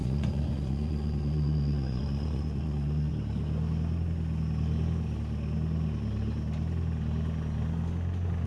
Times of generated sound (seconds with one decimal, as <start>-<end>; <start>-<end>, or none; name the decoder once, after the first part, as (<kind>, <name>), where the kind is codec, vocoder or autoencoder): 0.0-3.1 (vocoder, Vocos)